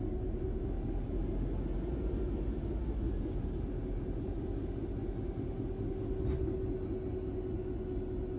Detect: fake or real real